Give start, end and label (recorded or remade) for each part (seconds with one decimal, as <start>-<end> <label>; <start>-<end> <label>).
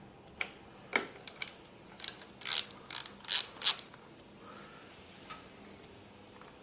0.0-6.6 recorded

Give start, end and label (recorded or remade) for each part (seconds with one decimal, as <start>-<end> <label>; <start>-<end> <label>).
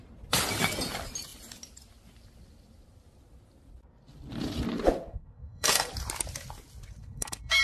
0.0-5.1 recorded; 5.1-5.9 remade; 5.9-7.0 recorded; 7.0-7.6 remade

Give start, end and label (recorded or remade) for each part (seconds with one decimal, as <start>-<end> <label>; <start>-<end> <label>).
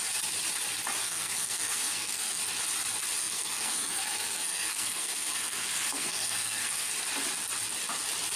0.0-1.0 recorded; 1.0-2.4 remade; 2.4-3.2 recorded; 3.2-6.9 remade; 6.9-8.4 recorded